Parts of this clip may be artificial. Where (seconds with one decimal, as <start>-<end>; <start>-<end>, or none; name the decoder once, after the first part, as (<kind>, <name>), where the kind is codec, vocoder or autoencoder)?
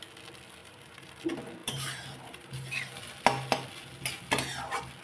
0.6-1.1 (vocoder, BigVGAN v2); 1.6-2.9